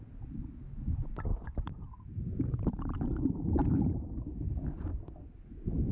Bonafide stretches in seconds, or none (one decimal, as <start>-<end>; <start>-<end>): 0.0-1.3; 2.4-3.6; 4.1-5.9